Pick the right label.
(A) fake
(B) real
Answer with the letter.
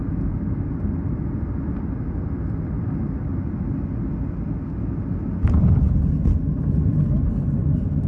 B